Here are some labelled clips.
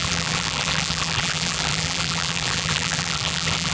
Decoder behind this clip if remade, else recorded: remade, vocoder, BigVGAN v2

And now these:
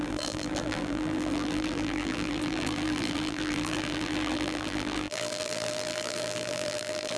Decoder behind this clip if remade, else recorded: remade, vocoder, BigVGAN v2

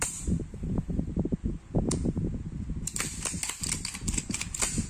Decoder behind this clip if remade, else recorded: recorded